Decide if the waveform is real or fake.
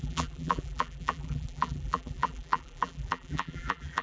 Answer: fake